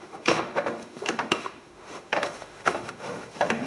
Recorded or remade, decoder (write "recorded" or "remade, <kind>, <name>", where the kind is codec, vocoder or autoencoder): remade, autoencoder, DAC-VAE